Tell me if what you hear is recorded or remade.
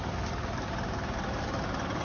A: recorded